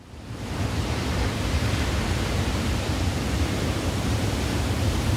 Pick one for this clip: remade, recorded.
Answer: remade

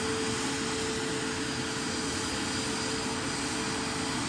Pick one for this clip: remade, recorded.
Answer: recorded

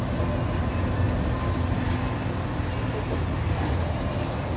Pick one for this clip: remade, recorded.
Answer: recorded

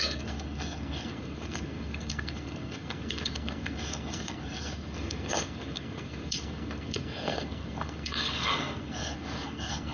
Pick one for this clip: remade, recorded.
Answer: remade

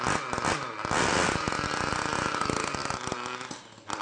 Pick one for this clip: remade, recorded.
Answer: recorded